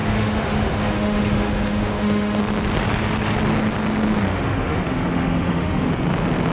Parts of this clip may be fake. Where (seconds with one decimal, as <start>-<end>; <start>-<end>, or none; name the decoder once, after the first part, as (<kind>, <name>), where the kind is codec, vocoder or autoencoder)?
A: 0.0-2.4 (autoencoder, DAC-VAE); 4.3-5.9

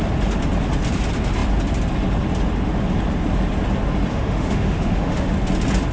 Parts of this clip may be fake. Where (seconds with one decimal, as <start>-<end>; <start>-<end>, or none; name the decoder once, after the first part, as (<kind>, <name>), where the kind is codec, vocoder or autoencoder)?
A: 4.1-5.3 (autoencoder, DAC-VAE)

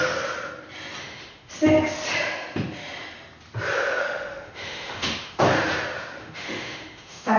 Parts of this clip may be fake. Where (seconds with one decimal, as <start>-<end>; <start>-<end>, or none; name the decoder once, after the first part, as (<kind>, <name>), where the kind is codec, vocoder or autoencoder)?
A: 1.0-1.5 (autoencoder, DAC-VAE); 4.0-5.4; 6.2-7.4

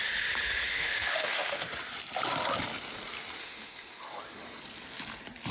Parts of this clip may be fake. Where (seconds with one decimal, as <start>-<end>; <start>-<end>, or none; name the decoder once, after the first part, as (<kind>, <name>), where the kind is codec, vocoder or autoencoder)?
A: 0.7-1.7 (autoencoder, DAC-VAE); 3.4-4.0